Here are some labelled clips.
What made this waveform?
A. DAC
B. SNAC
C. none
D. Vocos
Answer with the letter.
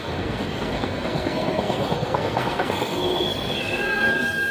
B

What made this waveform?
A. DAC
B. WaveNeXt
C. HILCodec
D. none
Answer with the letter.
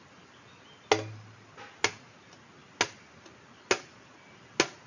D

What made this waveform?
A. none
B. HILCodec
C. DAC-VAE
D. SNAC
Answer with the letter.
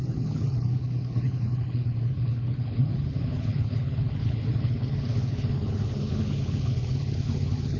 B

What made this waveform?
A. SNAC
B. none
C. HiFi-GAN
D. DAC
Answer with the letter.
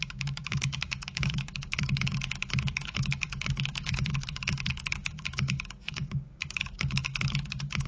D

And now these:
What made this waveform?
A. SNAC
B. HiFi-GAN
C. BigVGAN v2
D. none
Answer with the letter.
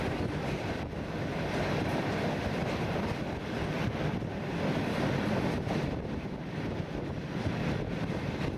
C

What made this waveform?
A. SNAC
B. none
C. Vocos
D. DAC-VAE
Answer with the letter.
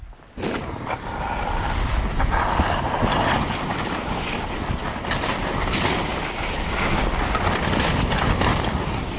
B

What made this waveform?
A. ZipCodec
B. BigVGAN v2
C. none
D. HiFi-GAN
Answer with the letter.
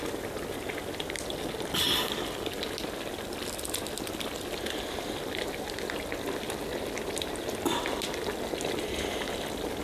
C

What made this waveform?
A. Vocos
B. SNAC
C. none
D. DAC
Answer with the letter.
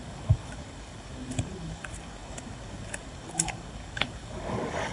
D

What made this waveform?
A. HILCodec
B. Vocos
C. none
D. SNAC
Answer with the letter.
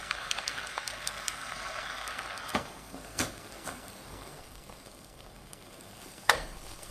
D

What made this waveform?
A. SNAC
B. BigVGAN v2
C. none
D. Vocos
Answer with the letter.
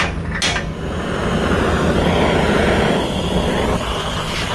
C